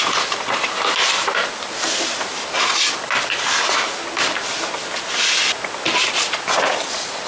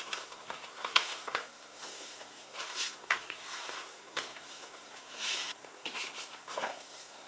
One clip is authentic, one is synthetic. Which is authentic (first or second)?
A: first